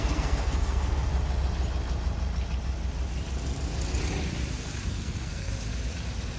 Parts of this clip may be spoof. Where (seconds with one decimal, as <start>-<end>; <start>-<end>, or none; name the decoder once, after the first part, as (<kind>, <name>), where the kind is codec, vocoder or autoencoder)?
0.0-1.1 (codec, SNAC); 4.9-5.5